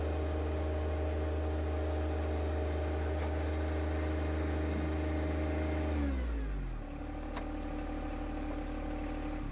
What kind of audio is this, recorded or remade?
recorded